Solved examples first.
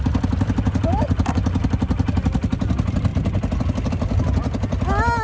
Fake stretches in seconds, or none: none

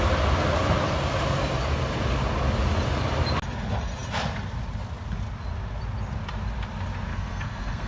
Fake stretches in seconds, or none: 7.1-7.9 (codec, SNAC)

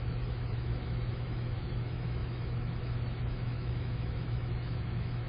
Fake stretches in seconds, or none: 0.0-5.3 (autoencoder, DAC-VAE)

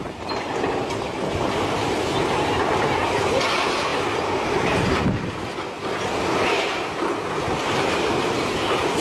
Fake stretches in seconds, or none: none

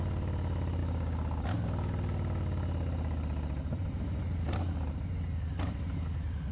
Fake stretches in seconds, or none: none

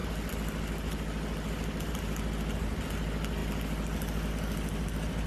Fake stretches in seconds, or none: none